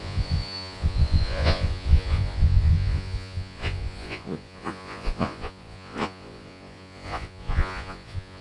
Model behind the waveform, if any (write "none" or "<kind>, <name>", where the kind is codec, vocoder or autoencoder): vocoder, Vocos